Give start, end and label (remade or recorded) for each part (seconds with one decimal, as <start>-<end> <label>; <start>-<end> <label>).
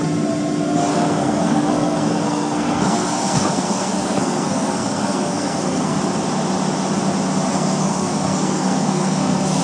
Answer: 0.0-0.9 recorded; 0.9-6.0 remade; 6.0-7.5 recorded; 7.5-9.6 remade